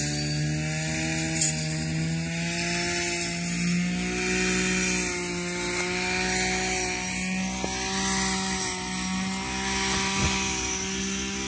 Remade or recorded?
recorded